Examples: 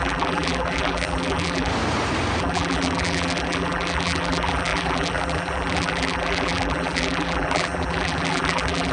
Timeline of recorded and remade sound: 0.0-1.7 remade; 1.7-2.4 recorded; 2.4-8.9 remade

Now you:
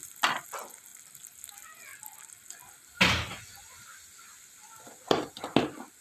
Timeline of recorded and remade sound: 0.0-6.0 recorded

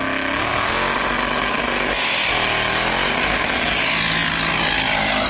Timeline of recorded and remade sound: 0.0-5.3 recorded

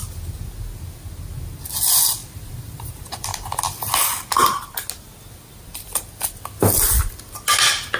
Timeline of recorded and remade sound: 0.0-2.2 recorded; 2.2-3.6 remade; 3.6-8.0 recorded